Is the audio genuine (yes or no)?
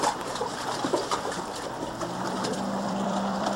no